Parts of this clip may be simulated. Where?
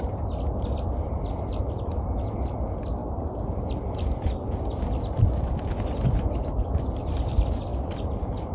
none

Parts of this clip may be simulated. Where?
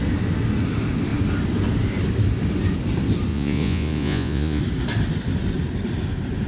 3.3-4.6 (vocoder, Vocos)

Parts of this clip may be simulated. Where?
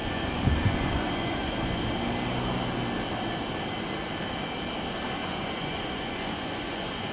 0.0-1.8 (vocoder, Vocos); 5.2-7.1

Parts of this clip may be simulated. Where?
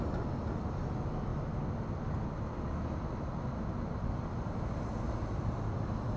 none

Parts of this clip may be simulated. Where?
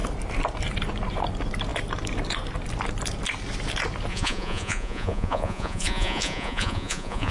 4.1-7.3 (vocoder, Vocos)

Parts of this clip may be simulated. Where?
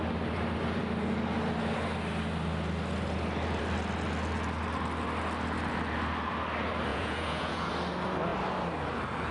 6.9-7.7 (vocoder, Vocos)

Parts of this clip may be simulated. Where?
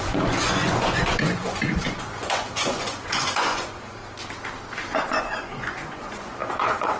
0.0-4.0 (vocoder, Vocos); 5.1-7.0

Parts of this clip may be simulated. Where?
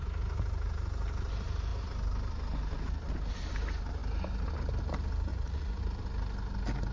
5.3-5.8 (vocoder, Vocos)